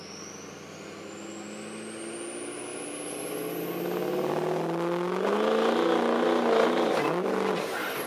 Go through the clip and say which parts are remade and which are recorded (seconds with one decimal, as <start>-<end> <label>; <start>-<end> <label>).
0.0-8.1 recorded